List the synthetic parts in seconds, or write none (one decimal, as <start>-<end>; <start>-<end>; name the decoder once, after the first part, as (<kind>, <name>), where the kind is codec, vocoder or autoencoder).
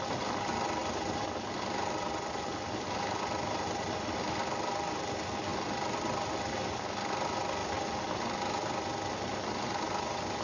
0.8-4.3 (vocoder, BigVGAN v2); 5.5-6.8; 7.6-8.2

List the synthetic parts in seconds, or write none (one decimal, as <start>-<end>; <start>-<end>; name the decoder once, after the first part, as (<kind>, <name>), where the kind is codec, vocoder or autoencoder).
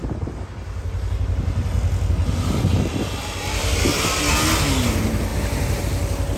3.6-4.3 (vocoder, BigVGAN v2); 5.3-5.8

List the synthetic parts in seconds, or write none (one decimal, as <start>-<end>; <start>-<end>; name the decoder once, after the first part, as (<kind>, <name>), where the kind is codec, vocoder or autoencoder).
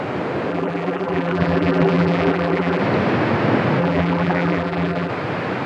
0.5-2.8 (vocoder, BigVGAN v2); 3.8-5.1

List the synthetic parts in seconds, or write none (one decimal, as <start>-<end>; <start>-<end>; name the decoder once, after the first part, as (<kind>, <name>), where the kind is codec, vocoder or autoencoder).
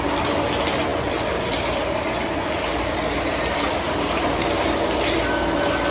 0.0-5.9 (vocoder, BigVGAN v2)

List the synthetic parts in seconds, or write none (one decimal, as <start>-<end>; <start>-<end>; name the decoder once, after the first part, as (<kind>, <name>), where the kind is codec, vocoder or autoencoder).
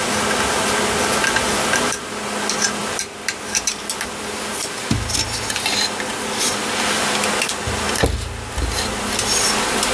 2.8-4.9 (vocoder, BigVGAN v2)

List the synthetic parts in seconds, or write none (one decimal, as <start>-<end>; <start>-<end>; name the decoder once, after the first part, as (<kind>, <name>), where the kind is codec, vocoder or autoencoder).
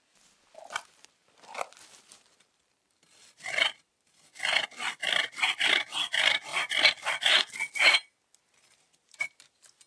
0.0-6.5 (vocoder, BigVGAN v2); 8.8-9.9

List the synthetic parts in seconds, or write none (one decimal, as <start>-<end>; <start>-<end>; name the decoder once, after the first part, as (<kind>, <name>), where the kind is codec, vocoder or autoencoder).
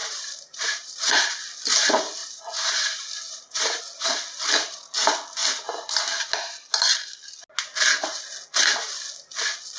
0.0-1.3 (vocoder, BigVGAN v2); 2.2-3.8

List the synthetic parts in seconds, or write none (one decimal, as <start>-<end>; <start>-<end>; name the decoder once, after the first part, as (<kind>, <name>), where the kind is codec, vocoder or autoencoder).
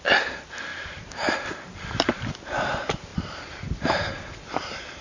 0.7-2.3 (vocoder, BigVGAN v2); 3.1-4.1